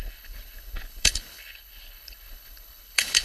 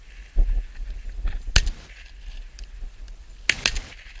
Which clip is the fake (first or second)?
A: first